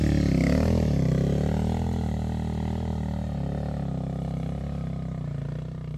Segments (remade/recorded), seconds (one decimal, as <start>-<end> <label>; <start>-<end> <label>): 0.0-6.0 recorded